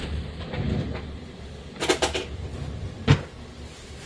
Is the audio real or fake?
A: real